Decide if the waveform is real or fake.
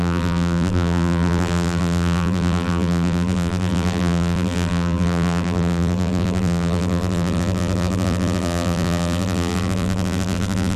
fake